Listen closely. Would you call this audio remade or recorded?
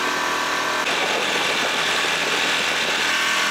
recorded